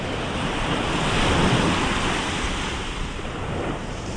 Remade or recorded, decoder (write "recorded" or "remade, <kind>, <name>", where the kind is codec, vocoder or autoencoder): recorded